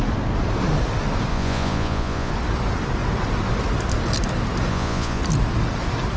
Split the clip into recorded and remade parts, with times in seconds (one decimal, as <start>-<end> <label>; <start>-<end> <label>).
0.0-1.3 recorded; 1.3-2.3 remade; 2.3-4.7 recorded; 4.7-5.2 remade; 5.2-6.2 recorded